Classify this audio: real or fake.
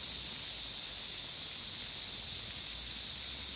real